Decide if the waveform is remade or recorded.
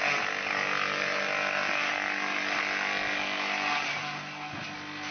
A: recorded